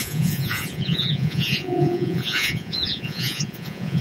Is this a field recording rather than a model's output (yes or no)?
no